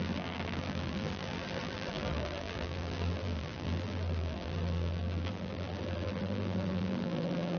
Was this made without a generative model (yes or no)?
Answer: no